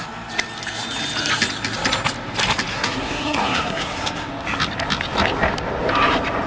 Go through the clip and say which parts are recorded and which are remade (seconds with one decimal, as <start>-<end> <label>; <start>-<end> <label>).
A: 0.0-2.7 recorded; 2.7-4.3 remade; 4.3-6.5 recorded